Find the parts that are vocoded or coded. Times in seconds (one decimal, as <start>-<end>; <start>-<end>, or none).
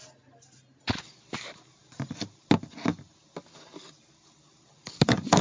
none